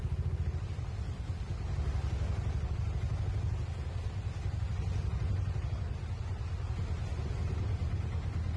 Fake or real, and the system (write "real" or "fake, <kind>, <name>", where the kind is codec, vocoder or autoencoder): real